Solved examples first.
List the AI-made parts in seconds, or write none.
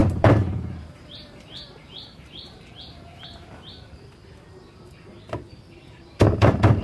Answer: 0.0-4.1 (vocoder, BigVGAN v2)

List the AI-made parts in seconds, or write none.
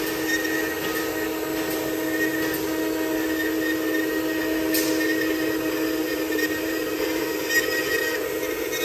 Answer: 6.0-7.4 (vocoder, BigVGAN v2)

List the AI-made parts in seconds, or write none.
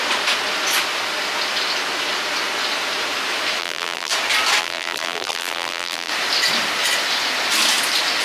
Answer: 3.6-4.1 (vocoder, BigVGAN v2); 4.6-6.1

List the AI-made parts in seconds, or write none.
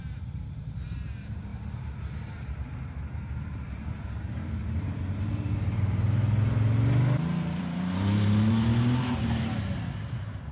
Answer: 0.0-1.5 (vocoder, BigVGAN v2); 2.5-4.4; 7.6-10.5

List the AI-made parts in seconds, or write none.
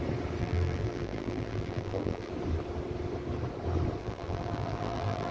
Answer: 0.4-2.3 (vocoder, BigVGAN v2); 4.0-5.3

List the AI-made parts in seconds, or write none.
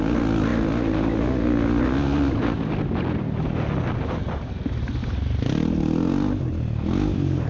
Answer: none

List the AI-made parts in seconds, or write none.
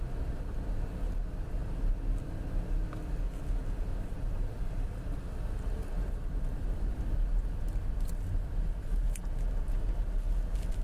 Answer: 3.9-7.0 (vocoder, BigVGAN v2)